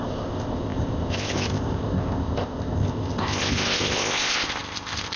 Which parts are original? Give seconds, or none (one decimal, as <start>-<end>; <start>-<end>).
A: none